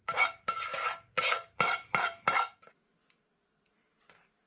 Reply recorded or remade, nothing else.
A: recorded